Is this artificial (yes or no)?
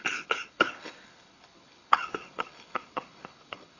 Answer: yes